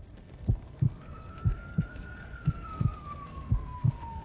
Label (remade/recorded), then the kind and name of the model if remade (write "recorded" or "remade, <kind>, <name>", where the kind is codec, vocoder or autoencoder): remade, codec, SNAC